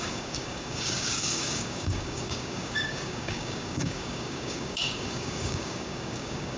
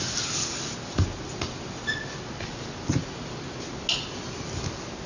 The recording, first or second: second